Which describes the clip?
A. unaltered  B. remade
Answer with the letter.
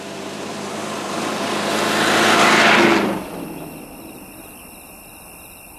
A